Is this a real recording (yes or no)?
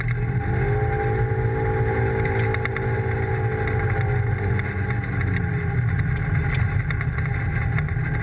yes